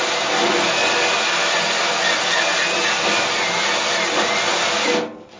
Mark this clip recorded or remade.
recorded